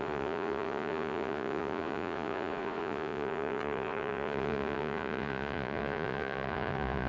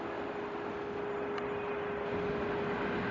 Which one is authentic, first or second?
second